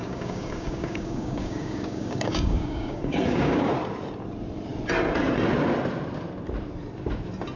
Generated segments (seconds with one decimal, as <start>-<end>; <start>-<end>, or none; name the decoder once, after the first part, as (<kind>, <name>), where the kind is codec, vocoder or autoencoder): 0.0-3.7 (codec, DAC)